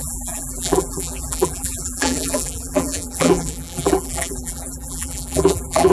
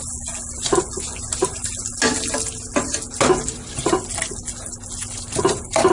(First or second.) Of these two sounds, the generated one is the first